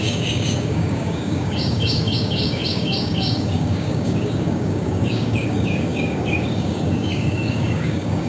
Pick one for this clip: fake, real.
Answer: fake